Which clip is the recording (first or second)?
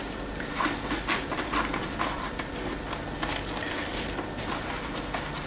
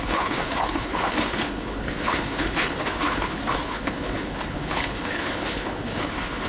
first